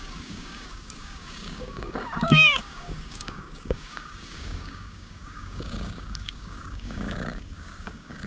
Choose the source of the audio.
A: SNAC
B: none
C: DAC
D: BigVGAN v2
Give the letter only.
C